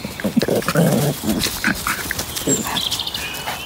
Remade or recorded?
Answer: recorded